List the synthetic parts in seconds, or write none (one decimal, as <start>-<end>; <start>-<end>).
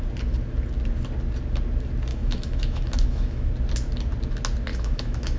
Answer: 2.1-3.5; 4.7-5.4